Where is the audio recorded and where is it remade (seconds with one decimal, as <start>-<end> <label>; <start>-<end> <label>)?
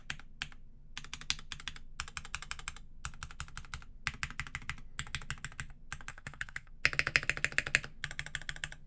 0.0-6.1 recorded; 6.1-6.7 remade; 6.7-8.9 recorded